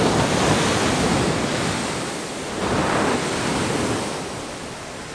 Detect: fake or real real